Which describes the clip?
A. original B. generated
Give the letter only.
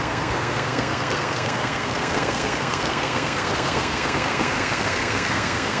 B